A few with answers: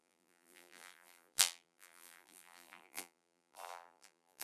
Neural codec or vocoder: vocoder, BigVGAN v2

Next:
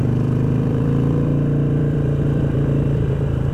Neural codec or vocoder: vocoder, BigVGAN v2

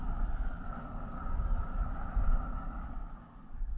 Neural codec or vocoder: vocoder, BigVGAN v2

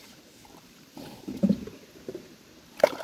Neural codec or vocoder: vocoder, BigVGAN v2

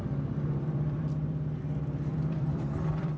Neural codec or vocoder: vocoder, BigVGAN v2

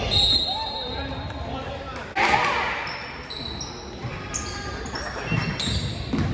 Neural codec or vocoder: none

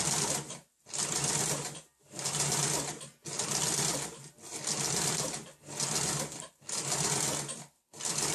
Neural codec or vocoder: none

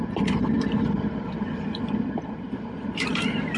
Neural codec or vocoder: vocoder, BigVGAN v2